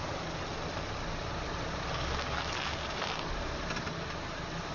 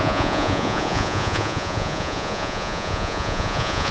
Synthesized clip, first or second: second